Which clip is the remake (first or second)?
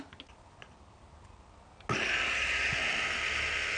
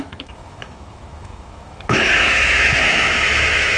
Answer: second